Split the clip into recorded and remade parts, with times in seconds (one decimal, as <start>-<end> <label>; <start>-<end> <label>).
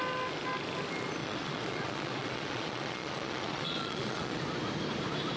0.0-1.2 recorded; 1.2-4.4 remade; 4.4-5.4 recorded